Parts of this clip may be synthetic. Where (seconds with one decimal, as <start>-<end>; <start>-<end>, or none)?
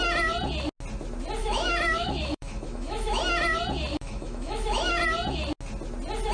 1.4-3.2; 3.9-5.0